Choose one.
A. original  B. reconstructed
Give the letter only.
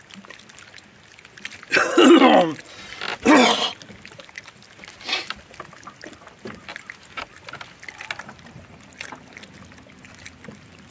A